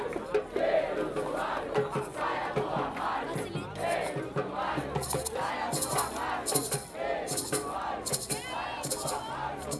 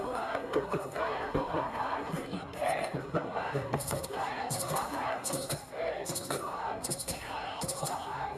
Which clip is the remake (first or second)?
second